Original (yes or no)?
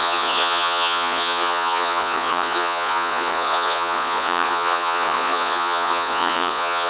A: no